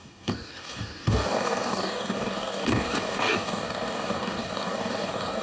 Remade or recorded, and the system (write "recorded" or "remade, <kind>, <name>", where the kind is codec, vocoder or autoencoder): remade, codec, DAC